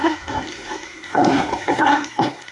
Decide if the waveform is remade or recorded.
remade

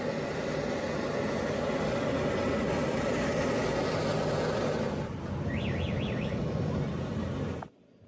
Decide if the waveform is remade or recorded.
recorded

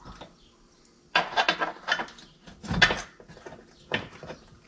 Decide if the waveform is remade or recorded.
recorded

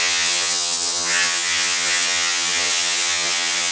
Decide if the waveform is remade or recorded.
remade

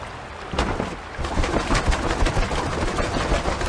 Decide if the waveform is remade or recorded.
recorded